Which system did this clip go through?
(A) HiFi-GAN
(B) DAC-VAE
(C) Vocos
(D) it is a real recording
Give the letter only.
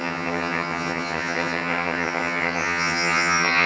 A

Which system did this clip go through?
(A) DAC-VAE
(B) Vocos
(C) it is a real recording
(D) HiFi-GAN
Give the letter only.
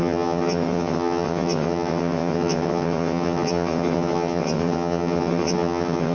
D